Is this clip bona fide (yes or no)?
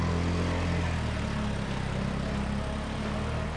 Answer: yes